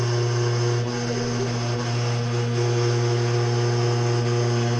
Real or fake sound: real